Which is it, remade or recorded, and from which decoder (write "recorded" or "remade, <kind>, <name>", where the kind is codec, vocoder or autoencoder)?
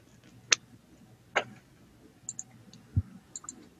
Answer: recorded